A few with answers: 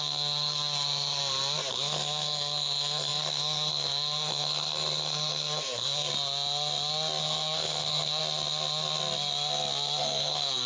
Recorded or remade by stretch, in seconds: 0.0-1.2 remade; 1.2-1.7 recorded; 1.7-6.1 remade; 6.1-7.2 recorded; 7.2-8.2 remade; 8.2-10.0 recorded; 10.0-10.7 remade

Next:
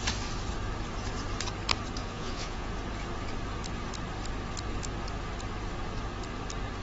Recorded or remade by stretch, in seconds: 0.0-2.0 recorded; 2.0-2.7 remade; 2.7-6.8 recorded

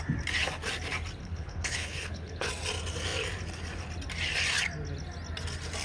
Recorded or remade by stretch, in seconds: 0.0-1.2 recorded; 1.2-2.5 remade; 2.5-5.8 recorded

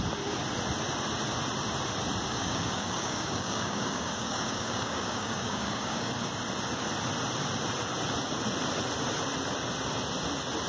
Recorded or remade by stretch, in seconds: 0.0-2.3 recorded; 2.3-6.1 remade; 6.1-10.7 recorded